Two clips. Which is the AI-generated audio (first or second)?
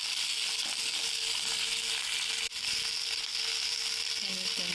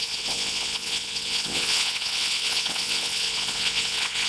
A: second